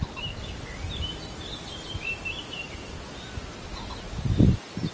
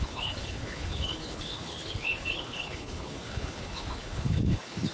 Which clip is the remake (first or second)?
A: second